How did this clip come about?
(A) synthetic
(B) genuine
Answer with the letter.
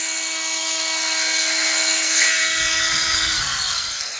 A